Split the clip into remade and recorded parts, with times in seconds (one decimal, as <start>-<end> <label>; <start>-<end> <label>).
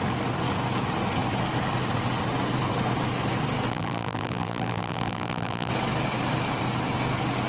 0.0-3.7 recorded; 3.7-5.7 remade; 5.7-7.5 recorded